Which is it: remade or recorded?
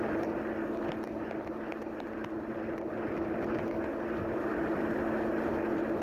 recorded